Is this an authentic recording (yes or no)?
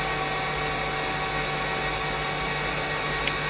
yes